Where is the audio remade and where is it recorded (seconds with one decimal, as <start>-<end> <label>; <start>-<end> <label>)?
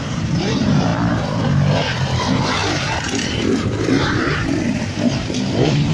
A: 0.0-0.9 remade; 0.9-2.2 recorded; 2.2-5.9 remade